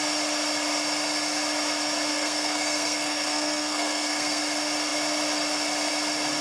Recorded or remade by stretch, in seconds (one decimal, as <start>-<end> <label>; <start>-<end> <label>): 0.0-2.1 recorded; 2.1-4.4 remade; 4.4-6.4 recorded